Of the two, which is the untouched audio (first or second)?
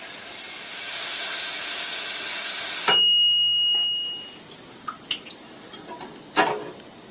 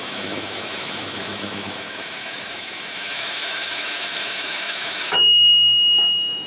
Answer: first